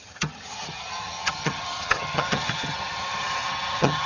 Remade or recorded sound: remade